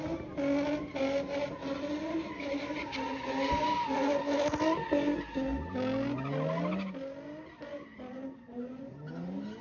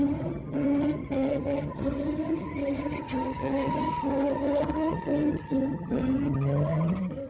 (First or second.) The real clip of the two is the first